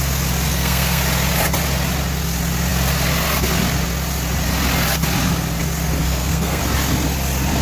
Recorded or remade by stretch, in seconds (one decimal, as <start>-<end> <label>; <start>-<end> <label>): 0.0-0.5 recorded; 0.5-1.0 remade; 1.0-6.0 recorded; 6.0-6.6 remade; 6.6-7.6 recorded